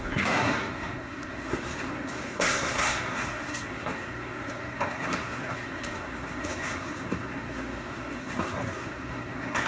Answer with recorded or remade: remade